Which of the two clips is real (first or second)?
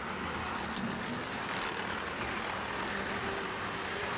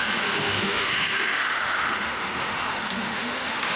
first